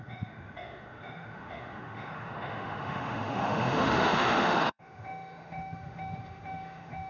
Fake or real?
fake